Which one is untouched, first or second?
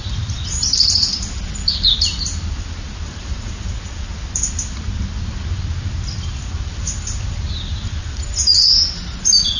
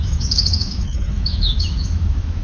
first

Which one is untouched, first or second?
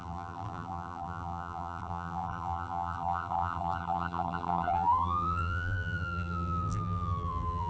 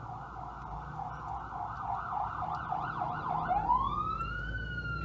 second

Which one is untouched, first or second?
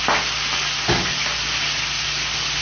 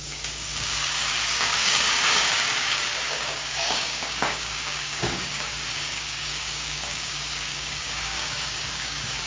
first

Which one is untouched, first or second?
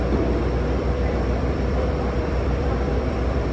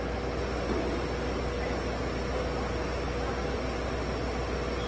second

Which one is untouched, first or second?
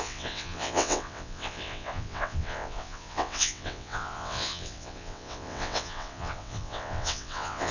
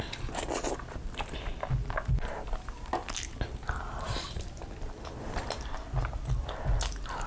second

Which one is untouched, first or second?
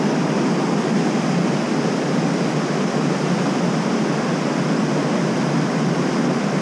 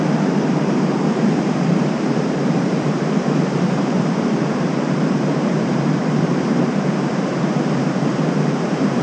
first